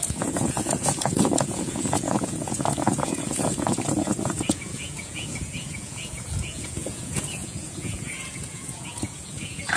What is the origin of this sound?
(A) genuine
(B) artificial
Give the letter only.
B